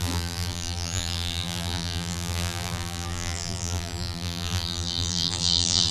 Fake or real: fake